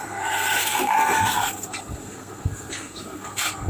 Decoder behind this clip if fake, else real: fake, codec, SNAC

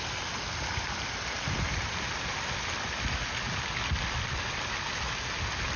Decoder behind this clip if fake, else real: real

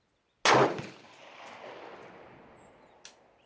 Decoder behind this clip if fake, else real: real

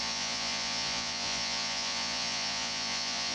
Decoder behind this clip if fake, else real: fake, vocoder, Vocos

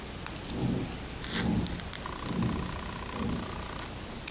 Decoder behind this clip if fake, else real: real